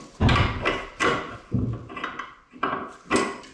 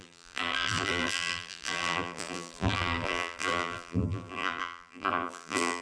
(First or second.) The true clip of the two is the first